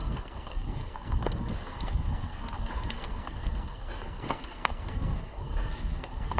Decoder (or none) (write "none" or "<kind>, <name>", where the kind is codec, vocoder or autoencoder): codec, SNAC